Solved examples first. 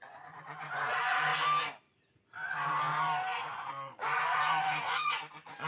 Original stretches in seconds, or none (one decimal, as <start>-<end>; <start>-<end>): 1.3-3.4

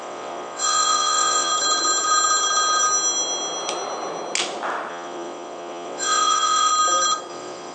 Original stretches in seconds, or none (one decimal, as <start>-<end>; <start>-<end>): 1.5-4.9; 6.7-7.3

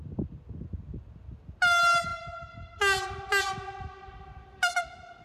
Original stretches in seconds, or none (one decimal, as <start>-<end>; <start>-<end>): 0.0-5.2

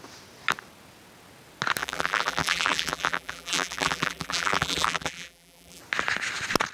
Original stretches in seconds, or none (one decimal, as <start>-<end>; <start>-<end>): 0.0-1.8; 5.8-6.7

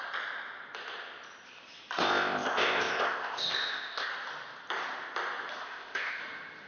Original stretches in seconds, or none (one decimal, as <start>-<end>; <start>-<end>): 0.0-2.0; 4.1-5.6; 6.2-6.7

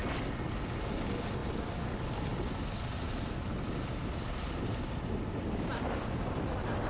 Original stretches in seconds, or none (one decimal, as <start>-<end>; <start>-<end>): 0.0-6.9